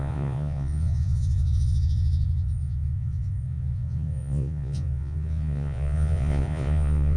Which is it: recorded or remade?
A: remade